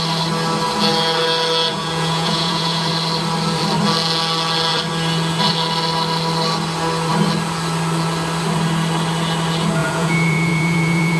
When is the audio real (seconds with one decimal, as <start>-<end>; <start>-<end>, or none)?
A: 0.0-1.7; 2.9-9.8